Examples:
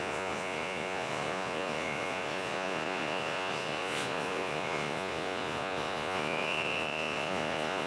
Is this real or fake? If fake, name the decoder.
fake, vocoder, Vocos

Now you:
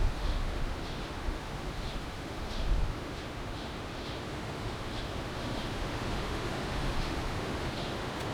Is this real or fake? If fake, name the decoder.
fake, autoencoder, DAC-VAE